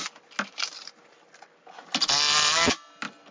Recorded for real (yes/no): yes